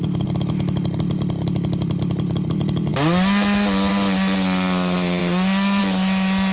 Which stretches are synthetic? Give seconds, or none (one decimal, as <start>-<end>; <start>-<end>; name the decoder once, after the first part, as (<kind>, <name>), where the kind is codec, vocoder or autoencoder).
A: none